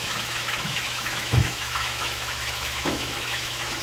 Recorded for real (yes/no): no